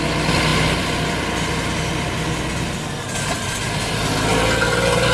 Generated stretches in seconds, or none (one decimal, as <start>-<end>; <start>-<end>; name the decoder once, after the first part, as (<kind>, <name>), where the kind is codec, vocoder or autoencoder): none

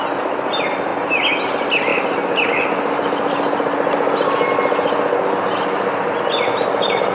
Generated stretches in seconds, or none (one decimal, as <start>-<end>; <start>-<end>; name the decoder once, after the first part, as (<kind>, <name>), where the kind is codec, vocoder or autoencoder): none

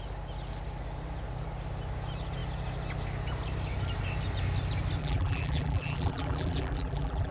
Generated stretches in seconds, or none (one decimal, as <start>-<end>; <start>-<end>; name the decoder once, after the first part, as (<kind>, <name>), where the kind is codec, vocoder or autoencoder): 5.0-7.3 (vocoder, BigVGAN v2)

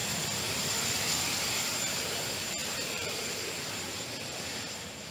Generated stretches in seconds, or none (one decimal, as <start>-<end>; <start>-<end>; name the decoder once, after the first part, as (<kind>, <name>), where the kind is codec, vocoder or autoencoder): 1.4-5.1 (vocoder, BigVGAN v2)

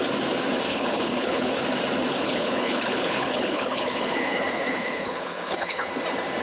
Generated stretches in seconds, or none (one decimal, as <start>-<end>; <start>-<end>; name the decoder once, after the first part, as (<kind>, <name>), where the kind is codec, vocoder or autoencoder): 0.7-1.6 (codec, HILCodec); 2.1-5.9

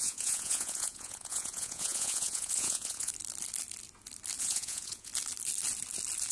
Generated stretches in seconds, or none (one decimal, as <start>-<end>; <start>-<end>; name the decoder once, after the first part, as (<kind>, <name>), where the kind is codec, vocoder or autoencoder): 0.0-3.1 (vocoder, Vocos); 4.4-5.1

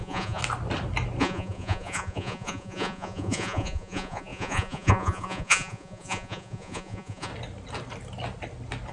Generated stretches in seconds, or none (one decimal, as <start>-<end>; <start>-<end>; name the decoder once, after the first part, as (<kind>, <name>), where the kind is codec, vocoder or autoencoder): 0.0-0.4 (vocoder, Vocos); 1.2-7.3